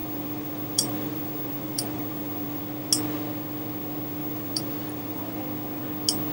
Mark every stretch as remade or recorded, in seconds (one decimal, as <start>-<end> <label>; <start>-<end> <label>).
0.0-2.6 remade; 2.6-4.2 recorded; 4.2-5.4 remade; 5.4-6.3 recorded